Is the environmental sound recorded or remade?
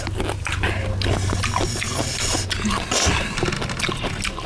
recorded